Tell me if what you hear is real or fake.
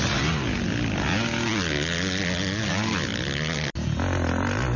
real